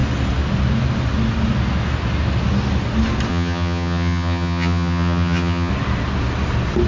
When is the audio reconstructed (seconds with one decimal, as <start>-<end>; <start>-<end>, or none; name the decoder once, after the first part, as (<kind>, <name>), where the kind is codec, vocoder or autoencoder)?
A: 3.3-5.7 (vocoder, HiFi-GAN)